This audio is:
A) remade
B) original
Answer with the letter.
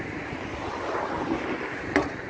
B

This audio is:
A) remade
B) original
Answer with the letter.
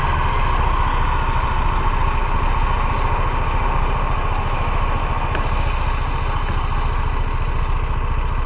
B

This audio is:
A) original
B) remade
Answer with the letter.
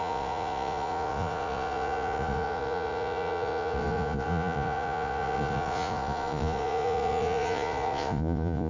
B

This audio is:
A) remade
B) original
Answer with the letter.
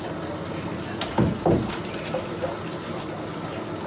B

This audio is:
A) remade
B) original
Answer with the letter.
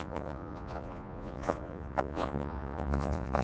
A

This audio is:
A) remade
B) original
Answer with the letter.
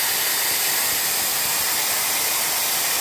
B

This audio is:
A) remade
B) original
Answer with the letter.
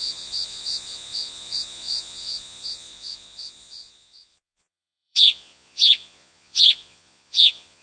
A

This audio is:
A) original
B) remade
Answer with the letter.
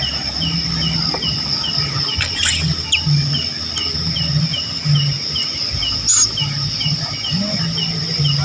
A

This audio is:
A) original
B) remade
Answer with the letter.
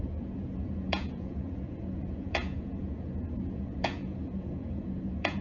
B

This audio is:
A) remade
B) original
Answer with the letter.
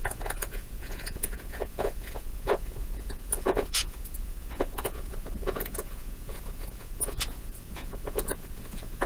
A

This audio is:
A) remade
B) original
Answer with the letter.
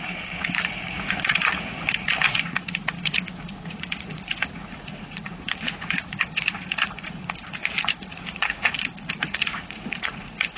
A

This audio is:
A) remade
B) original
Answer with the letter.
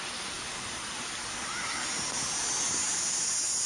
B